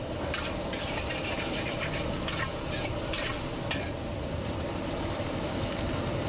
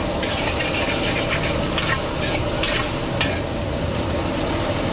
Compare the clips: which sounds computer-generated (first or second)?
first